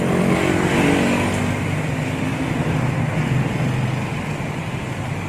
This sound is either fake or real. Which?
real